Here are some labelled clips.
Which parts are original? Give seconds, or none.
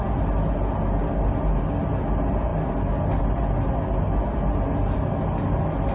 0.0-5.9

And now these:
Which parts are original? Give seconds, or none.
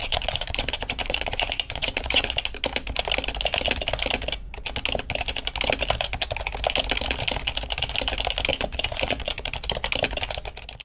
2.4-8.5; 9.5-10.8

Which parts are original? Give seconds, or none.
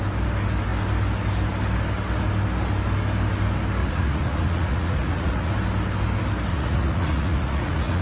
0.0-3.8; 5.5-6.5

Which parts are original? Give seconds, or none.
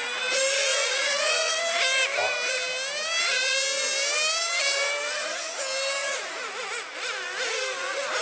0.0-0.7; 1.5-6.0; 6.5-8.2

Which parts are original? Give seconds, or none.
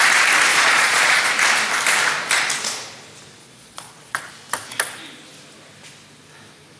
0.0-0.5; 1.2-3.4; 4.3-6.8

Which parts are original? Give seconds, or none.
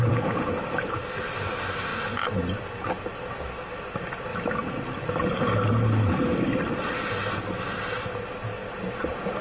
0.0-9.4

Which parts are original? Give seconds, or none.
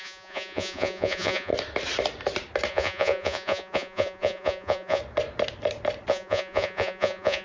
1.5-2.7; 5.0-6.1